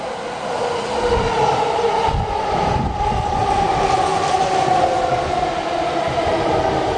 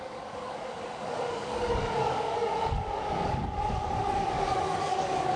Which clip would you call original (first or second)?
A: first